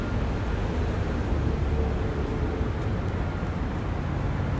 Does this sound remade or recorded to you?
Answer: recorded